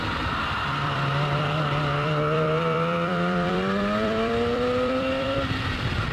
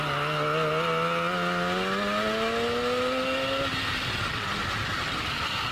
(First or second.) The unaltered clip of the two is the second